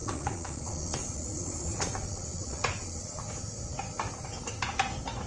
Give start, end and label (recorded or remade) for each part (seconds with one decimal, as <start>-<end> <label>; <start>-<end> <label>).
0.0-3.2 remade; 3.2-5.3 recorded